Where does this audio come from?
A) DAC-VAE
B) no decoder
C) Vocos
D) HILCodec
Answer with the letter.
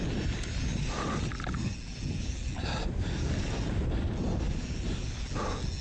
B